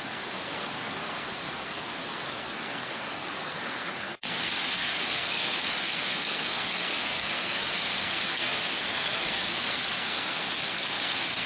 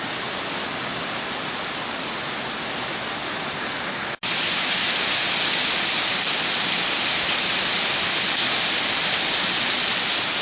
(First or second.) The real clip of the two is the second